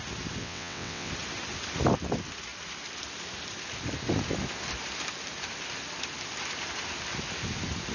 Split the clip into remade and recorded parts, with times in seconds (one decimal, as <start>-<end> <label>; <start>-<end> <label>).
0.0-0.4 recorded; 0.4-1.1 remade; 1.1-7.9 recorded